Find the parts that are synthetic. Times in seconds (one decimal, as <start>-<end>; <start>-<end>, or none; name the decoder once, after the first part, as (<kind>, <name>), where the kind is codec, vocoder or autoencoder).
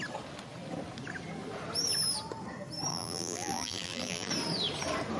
2.9-4.3 (vocoder, BigVGAN v2)